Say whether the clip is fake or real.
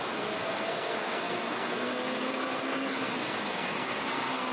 fake